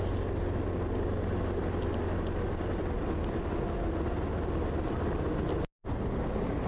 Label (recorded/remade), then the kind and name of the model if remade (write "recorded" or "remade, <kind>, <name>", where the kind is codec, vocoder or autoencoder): recorded